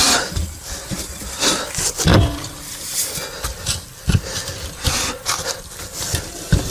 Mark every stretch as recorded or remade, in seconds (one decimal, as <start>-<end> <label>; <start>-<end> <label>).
0.0-6.7 recorded